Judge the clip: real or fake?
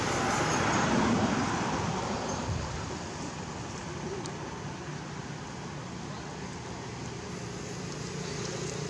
real